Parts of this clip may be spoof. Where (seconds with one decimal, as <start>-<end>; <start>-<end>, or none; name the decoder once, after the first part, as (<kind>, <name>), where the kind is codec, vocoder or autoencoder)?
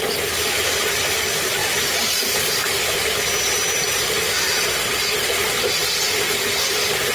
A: none